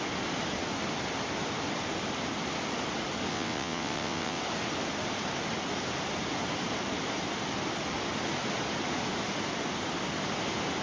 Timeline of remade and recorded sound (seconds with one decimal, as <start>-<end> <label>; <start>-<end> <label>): 0.0-3.3 recorded; 3.3-4.4 remade; 4.4-10.8 recorded